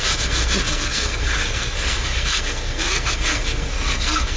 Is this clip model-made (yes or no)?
yes